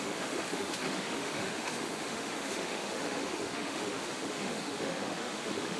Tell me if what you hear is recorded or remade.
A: remade